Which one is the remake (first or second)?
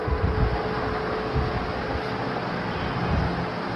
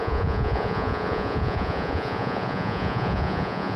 second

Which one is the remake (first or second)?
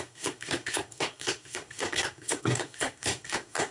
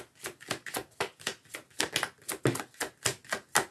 first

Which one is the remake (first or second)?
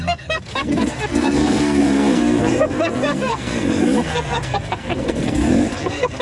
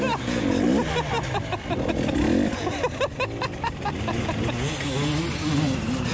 first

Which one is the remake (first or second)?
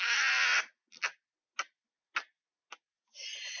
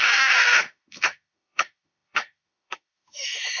second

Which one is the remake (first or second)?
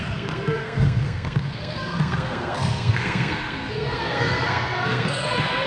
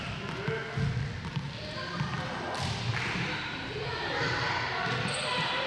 first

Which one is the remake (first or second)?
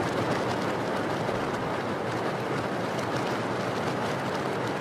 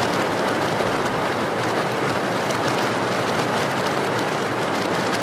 second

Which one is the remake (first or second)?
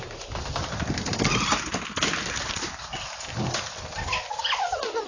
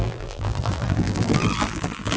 second